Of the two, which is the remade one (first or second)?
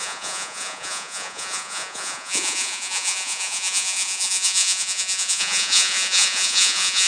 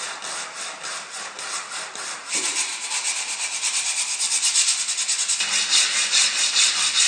first